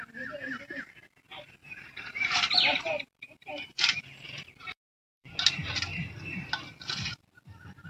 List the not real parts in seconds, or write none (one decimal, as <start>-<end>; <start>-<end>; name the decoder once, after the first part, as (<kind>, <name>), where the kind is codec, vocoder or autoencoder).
1.6-5.3 (vocoder, BigVGAN v2); 5.9-6.5